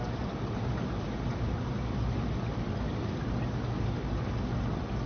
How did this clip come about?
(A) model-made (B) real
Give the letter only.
B